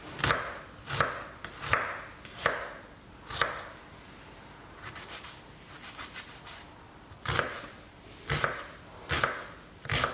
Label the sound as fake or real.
real